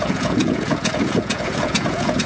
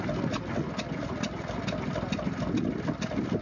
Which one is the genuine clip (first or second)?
second